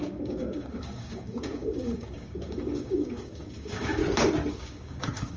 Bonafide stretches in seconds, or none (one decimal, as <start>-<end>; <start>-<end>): 4.0-4.5